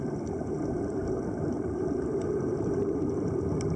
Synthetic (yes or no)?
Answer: no